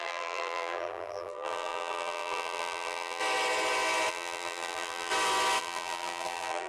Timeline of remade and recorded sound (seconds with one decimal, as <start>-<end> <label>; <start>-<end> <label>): 0.0-3.2 remade; 3.2-4.1 recorded; 4.1-5.1 remade; 5.1-5.6 recorded; 5.6-6.7 remade